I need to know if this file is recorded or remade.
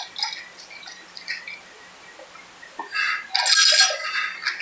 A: recorded